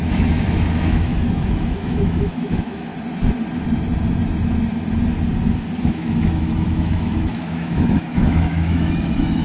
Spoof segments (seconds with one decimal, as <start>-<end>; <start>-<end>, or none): 0.0-2.9; 5.9-9.4